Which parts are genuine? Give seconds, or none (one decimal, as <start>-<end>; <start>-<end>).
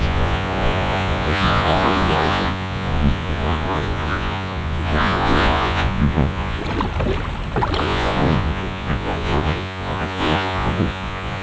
6.6-7.8